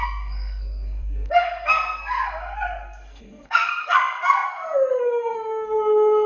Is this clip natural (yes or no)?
no